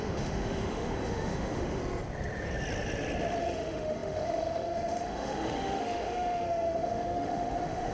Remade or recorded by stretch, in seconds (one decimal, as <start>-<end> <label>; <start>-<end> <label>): 0.0-1.8 remade; 1.8-3.4 recorded; 3.4-7.9 remade